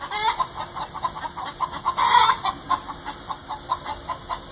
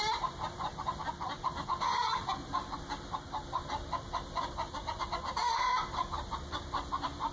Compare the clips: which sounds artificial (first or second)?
second